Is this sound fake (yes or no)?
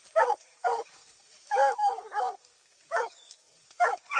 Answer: yes